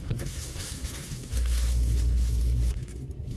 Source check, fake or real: fake